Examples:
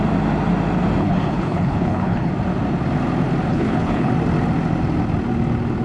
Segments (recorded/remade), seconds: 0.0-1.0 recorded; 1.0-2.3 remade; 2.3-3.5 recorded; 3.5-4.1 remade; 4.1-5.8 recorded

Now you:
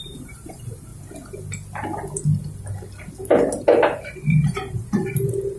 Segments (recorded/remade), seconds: 0.0-0.9 remade; 0.9-4.3 recorded; 4.3-5.6 remade